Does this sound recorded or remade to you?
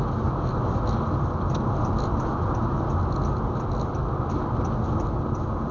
recorded